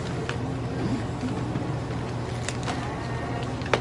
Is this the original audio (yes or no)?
yes